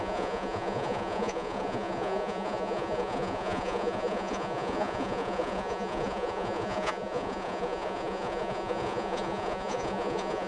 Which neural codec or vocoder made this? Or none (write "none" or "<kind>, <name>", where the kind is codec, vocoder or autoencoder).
vocoder, Vocos